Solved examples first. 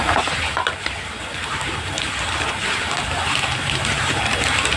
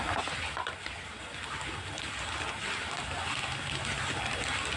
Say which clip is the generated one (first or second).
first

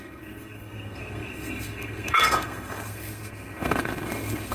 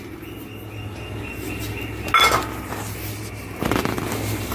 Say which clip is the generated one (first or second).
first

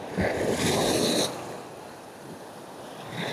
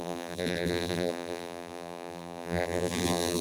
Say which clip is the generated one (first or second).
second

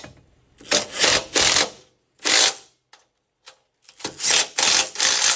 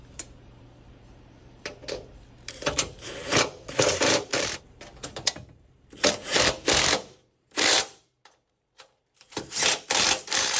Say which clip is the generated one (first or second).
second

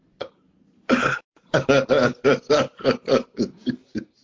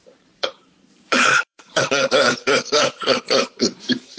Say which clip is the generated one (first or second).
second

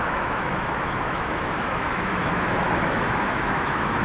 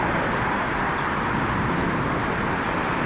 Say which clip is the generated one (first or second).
first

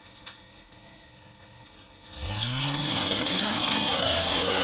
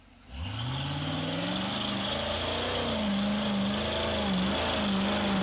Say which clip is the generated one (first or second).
first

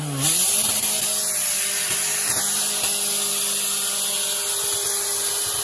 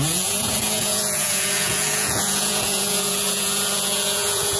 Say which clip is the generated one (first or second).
second